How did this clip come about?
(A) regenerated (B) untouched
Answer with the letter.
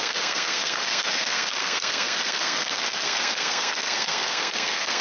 A